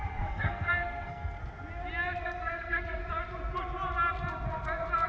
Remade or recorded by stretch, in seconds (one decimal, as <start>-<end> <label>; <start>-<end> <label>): 0.0-1.4 remade; 1.4-2.2 recorded; 2.2-3.0 remade; 3.0-5.1 recorded